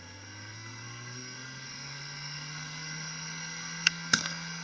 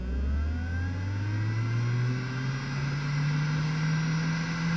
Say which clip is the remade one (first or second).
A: first